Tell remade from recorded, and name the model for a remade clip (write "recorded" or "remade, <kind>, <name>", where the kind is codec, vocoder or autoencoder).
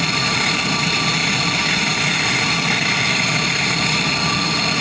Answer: recorded